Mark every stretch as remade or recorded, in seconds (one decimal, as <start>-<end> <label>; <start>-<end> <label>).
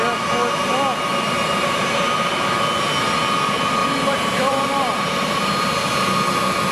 0.0-1.1 recorded; 1.1-2.3 remade; 2.3-3.8 recorded; 3.8-5.7 remade; 5.7-6.7 recorded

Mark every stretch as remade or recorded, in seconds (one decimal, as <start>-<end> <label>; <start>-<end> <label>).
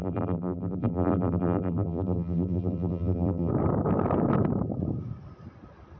0.0-3.5 remade; 3.5-6.0 recorded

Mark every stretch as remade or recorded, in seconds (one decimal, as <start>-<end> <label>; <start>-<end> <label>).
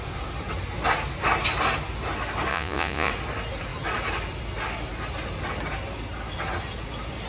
0.0-2.5 recorded; 2.5-3.1 remade; 3.1-7.3 recorded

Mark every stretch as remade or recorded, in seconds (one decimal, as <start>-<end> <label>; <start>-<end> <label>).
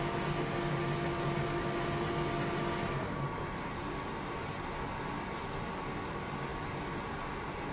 0.0-7.7 recorded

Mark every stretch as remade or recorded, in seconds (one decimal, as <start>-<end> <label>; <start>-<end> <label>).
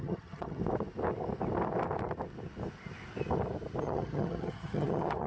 0.0-0.6 remade; 0.6-3.8 recorded; 3.8-5.3 remade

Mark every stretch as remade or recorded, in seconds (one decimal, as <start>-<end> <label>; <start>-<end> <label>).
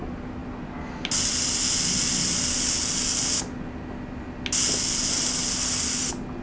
0.0-6.4 recorded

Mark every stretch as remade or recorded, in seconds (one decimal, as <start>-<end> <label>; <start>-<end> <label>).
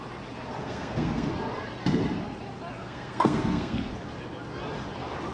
0.0-0.6 recorded; 0.6-1.3 remade; 1.3-2.8 recorded; 2.8-3.9 remade; 3.9-5.3 recorded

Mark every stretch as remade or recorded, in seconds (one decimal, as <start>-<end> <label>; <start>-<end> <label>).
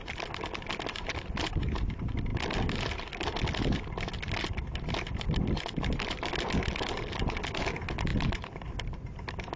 0.0-9.6 recorded